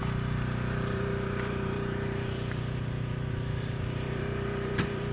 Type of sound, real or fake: fake